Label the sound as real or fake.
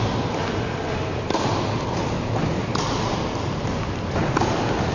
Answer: real